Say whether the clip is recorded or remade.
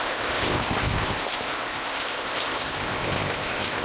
remade